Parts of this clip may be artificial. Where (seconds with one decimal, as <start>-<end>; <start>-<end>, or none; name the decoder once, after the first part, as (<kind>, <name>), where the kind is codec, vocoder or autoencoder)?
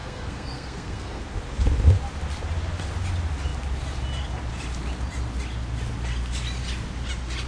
0.0-1.2 (codec, SNAC)